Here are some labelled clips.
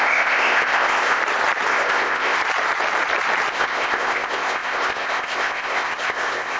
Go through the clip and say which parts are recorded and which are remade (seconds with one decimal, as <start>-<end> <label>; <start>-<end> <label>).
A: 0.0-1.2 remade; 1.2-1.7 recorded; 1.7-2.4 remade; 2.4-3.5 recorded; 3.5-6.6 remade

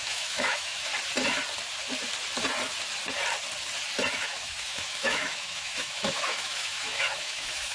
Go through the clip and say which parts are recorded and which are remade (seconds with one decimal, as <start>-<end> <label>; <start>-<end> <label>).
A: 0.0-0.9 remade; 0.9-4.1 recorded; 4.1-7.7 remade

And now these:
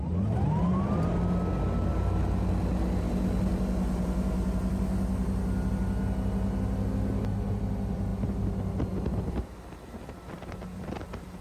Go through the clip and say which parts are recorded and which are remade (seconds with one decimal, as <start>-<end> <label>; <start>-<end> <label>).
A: 0.0-11.4 recorded

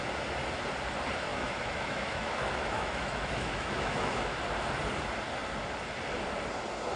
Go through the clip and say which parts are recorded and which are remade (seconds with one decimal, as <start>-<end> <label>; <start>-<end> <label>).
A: 0.0-1.3 recorded; 1.3-4.4 remade; 4.4-7.0 recorded

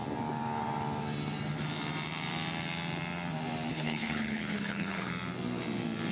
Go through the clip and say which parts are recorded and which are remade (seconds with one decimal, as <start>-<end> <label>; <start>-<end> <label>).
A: 0.0-3.7 recorded; 3.7-5.1 remade; 5.1-6.1 recorded

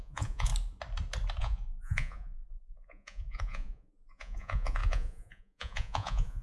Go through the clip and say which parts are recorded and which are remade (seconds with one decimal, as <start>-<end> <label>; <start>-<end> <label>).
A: 0.0-0.5 remade; 0.5-1.4 recorded; 1.4-6.4 remade

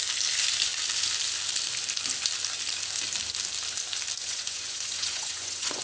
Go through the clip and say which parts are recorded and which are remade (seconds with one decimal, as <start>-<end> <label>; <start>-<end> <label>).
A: 0.0-4.2 recorded; 4.2-5.8 remade